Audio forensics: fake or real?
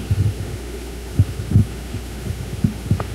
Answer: fake